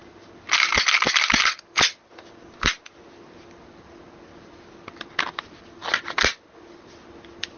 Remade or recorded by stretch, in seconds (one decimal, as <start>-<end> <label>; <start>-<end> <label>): 0.0-7.6 recorded